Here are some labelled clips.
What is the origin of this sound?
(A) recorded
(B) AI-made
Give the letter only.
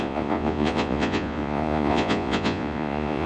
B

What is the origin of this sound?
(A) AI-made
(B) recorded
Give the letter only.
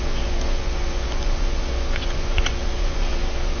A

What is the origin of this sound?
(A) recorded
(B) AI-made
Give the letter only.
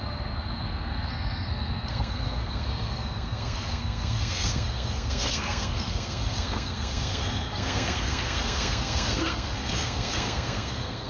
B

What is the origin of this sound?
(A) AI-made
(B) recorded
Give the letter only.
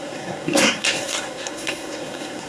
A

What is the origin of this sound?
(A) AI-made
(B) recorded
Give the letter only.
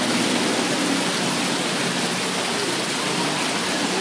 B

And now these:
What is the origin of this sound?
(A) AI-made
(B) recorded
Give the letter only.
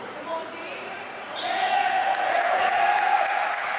A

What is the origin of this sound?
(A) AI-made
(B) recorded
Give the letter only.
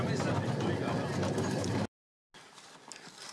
B